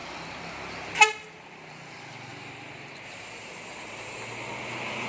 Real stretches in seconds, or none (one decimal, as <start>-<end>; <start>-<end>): 0.0-5.1

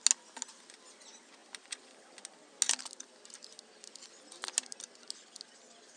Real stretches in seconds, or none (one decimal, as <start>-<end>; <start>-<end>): 0.0-6.0